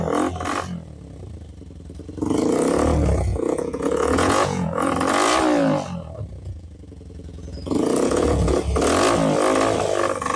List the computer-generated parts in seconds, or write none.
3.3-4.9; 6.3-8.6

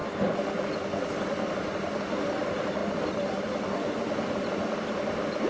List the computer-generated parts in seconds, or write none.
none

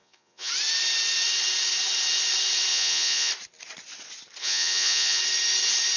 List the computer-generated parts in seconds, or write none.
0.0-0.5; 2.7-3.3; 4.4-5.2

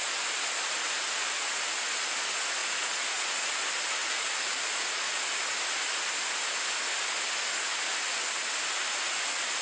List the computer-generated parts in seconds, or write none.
2.6-3.5; 4.0-5.2

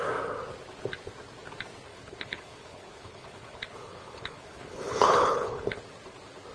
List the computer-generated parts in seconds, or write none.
1.9-5.8

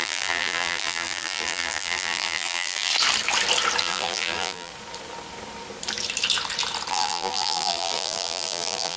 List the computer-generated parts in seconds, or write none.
0.0-2.9; 3.8-4.7; 6.9-9.0